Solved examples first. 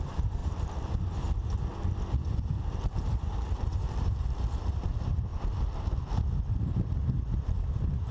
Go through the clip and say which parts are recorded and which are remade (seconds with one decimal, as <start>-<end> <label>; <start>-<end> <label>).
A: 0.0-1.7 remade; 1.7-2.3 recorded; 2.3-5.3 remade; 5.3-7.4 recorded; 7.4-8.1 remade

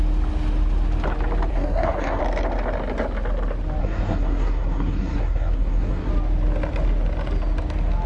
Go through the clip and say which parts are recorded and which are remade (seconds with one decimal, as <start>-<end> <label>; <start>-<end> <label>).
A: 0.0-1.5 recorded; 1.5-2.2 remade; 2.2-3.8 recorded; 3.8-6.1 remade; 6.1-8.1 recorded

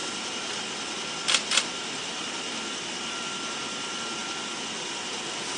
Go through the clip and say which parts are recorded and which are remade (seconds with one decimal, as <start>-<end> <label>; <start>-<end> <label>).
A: 0.0-5.6 recorded

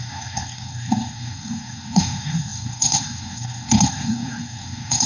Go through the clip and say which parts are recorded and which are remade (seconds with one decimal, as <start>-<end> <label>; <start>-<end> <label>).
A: 0.0-5.1 remade

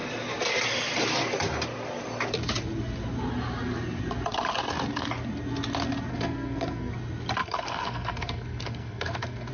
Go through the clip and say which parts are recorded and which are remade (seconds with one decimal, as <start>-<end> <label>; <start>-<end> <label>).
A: 0.0-6.1 recorded; 6.1-6.9 remade; 6.9-7.4 recorded; 7.4-9.5 remade

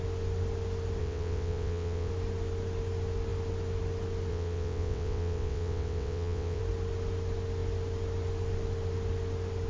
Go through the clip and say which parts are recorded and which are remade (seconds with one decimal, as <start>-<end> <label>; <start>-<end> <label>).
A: 0.0-1.0 recorded; 1.0-2.1 remade; 2.1-4.3 recorded; 4.3-6.6 remade; 6.6-9.7 recorded

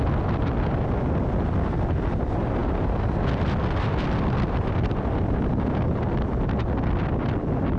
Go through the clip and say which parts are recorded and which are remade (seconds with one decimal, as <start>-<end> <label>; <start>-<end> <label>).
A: 0.0-7.8 recorded

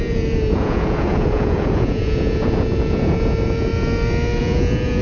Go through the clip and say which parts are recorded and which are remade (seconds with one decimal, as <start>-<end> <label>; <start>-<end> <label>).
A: 0.0-3.7 remade; 3.7-4.4 recorded; 4.4-5.0 remade